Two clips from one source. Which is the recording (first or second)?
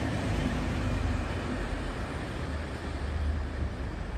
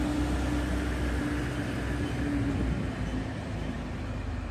second